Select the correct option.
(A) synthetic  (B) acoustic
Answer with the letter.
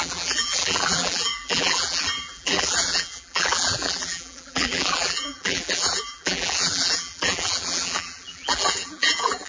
A